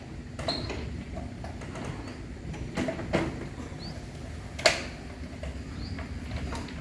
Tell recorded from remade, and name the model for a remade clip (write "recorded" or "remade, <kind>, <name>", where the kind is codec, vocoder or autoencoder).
recorded